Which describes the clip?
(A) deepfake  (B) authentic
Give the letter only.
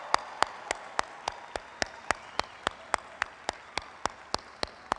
B